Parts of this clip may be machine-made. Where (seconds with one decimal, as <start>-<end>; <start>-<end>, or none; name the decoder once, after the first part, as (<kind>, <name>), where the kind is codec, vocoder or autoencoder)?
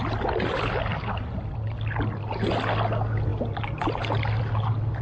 none